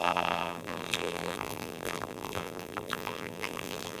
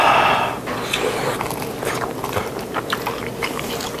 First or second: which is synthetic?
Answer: first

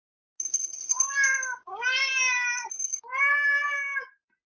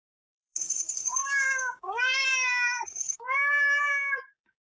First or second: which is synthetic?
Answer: second